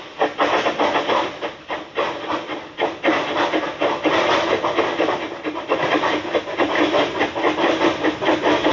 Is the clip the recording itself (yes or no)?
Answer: yes